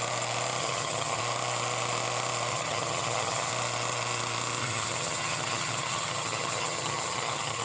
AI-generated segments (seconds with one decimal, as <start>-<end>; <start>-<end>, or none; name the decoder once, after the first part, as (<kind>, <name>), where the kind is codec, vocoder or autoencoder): 0.6-1.2 (vocoder, HiFi-GAN); 2.5-3.5; 4.6-7.6